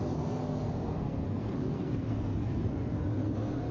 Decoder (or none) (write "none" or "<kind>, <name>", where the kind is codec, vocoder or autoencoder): codec, SNAC